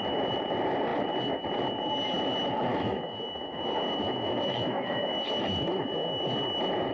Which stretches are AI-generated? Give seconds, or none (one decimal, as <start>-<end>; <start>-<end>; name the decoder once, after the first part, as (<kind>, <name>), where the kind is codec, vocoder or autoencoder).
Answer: 2.7-6.1 (autoencoder, DAC-VAE)